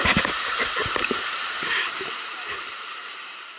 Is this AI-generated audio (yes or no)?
yes